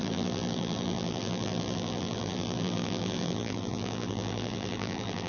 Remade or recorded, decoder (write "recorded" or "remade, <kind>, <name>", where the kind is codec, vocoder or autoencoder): remade, vocoder, BigVGAN v2